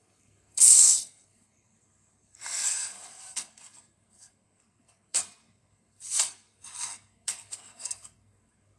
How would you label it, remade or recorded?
remade